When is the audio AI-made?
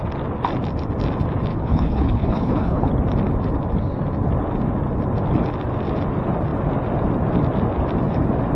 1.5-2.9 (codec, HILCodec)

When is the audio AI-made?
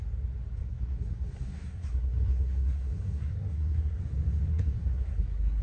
0.6-4.0 (codec, SNAC); 4.5-5.6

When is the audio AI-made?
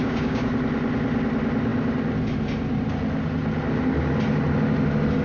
0.0-0.5 (codec, DAC)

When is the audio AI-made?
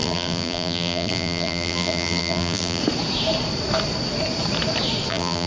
0.0-2.8 (vocoder, BigVGAN v2); 5.1-5.5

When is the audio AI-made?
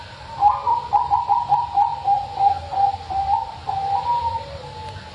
none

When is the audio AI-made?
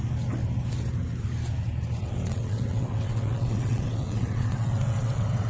2.0-5.5 (vocoder, WaveNeXt)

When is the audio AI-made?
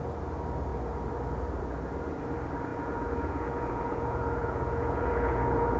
2.7-5.8 (vocoder, Vocos)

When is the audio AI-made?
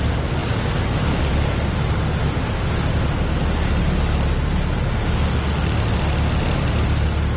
0.4-2.7 (vocoder, BigVGAN v2)